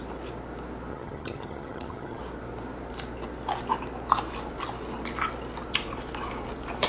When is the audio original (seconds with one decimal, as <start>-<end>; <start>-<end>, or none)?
0.0-0.9; 2.2-6.9

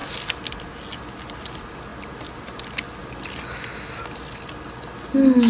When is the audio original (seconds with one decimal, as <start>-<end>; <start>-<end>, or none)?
0.0-5.5